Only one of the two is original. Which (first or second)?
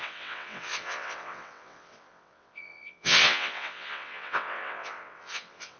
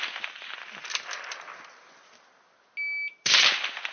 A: second